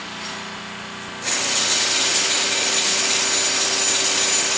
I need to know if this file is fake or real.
real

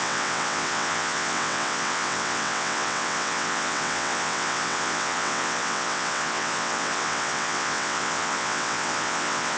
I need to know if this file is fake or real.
fake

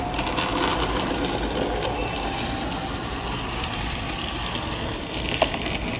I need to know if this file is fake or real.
real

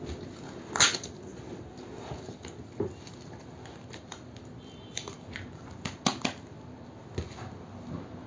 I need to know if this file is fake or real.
real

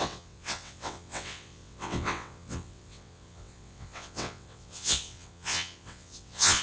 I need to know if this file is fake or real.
fake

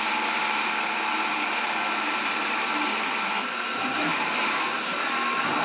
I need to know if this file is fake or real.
real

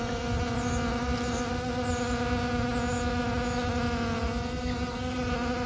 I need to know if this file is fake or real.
real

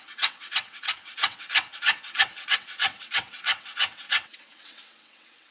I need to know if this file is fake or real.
fake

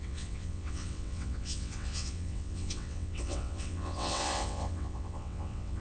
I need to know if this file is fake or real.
fake